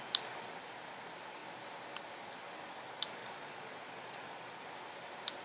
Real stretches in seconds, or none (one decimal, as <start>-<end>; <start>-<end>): 0.0-3.2; 4.6-5.4